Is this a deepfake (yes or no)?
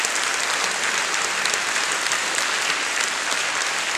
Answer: yes